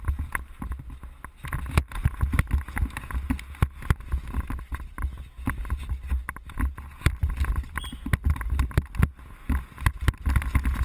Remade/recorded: recorded